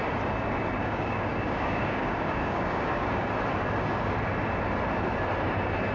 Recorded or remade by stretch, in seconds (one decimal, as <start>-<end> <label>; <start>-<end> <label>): 0.0-0.8 recorded; 0.8-3.3 remade; 3.3-5.9 recorded